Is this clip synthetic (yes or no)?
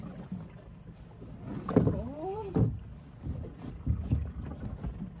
no